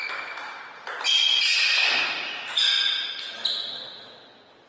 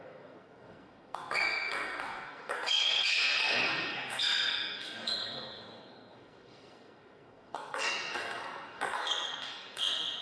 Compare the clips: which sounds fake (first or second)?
second